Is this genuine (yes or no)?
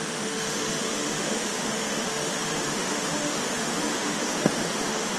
no